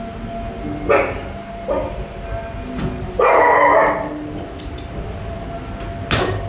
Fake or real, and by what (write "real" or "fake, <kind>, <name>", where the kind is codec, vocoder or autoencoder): real